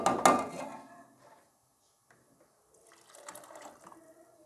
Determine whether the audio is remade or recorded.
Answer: recorded